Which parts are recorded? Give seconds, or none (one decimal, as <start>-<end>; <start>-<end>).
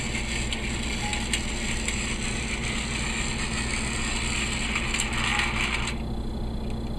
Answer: 0.0-7.0